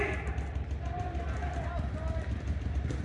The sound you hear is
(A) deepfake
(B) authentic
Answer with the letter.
B